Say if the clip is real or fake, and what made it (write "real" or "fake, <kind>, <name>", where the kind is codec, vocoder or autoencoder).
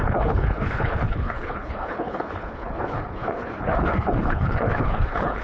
fake, codec, HILCodec